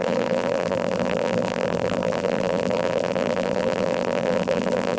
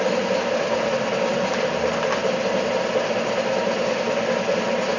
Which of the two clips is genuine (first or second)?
second